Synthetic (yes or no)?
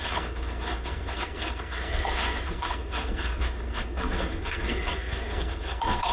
yes